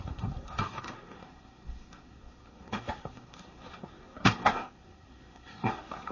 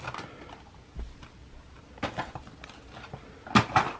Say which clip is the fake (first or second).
first